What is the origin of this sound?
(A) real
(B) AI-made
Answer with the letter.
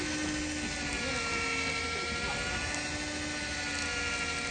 A